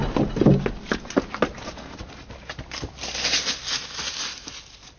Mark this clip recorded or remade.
recorded